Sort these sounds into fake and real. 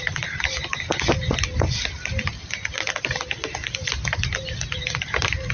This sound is real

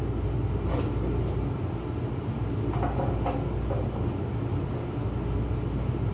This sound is real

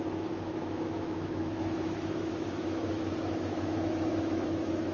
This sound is fake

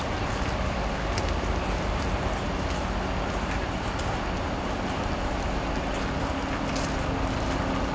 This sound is real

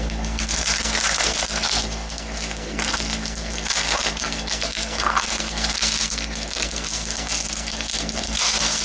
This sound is fake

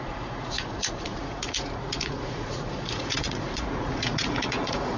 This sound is fake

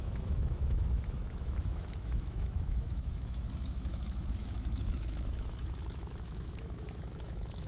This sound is fake